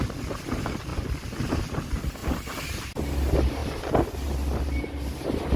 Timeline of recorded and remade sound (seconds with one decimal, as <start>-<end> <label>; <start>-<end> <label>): 0.0-5.6 recorded